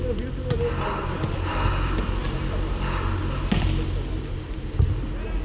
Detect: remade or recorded recorded